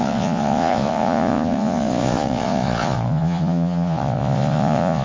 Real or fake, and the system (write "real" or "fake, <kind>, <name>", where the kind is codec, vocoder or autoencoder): fake, vocoder, Vocos